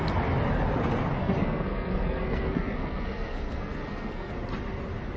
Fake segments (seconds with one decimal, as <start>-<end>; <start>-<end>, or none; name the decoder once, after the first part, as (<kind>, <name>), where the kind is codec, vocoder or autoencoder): 1.2-4.3 (codec, SNAC)